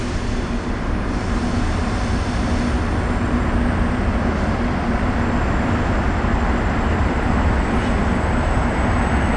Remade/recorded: recorded